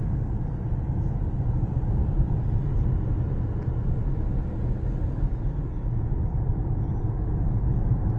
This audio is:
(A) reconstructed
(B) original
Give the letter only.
B